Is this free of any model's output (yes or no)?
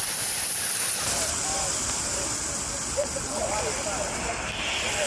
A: yes